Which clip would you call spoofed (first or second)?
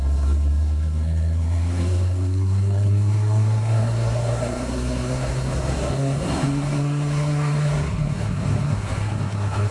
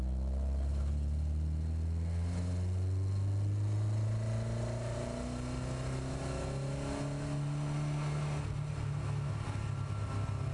first